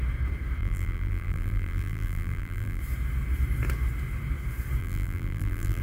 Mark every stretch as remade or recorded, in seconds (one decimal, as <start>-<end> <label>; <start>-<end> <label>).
0.0-0.6 recorded; 0.6-2.8 remade; 2.8-4.8 recorded; 4.8-5.8 remade